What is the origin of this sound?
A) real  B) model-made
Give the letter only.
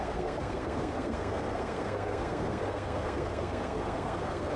B